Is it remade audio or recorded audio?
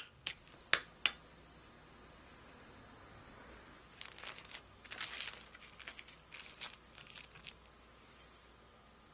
recorded